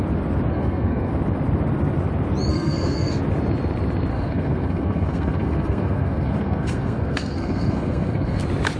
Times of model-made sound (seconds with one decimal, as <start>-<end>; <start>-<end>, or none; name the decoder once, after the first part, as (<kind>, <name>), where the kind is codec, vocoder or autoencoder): 0.5-1.1 (codec, SNAC); 2.5-3.2; 4.1-8.4